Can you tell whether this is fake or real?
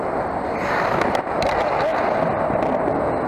real